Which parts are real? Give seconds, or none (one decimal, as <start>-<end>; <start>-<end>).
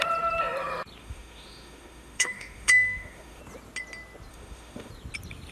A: 0.0-1.0; 3.4-4.3; 4.9-5.5